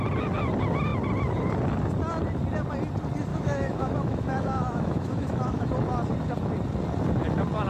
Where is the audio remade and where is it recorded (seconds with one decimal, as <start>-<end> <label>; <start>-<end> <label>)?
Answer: 0.0-3.3 recorded; 3.3-5.7 remade; 5.7-7.7 recorded